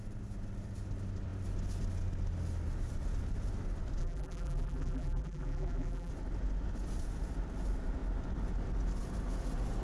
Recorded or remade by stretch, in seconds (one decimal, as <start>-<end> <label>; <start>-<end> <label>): 0.0-4.0 recorded; 4.0-6.1 remade; 6.1-9.8 recorded